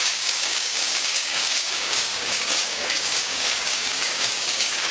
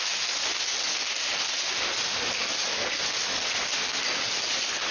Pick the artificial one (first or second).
first